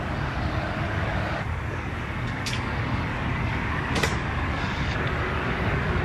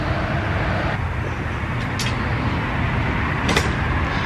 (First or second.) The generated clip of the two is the first